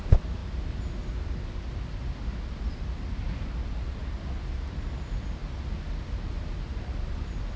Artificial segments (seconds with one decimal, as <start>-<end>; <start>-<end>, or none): none